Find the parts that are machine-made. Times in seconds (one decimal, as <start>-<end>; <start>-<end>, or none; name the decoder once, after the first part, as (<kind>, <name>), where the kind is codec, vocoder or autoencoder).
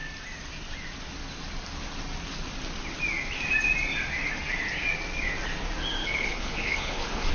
6.0-7.3 (codec, HILCodec)